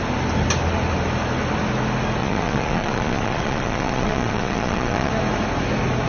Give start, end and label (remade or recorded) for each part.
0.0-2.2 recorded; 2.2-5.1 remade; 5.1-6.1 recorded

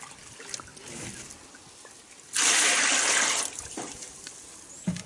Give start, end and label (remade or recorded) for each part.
0.0-5.1 recorded

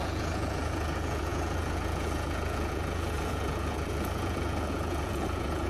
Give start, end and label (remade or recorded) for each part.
0.0-5.7 remade

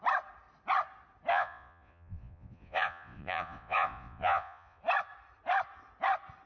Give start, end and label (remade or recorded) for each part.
0.0-1.3 recorded; 1.3-4.8 remade; 4.8-6.5 recorded

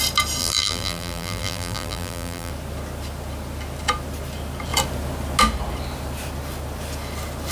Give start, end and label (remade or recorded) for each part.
0.0-0.4 recorded; 0.4-2.5 remade; 2.5-7.5 recorded

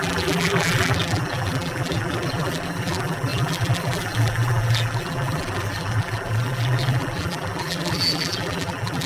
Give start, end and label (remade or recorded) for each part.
0.0-9.1 remade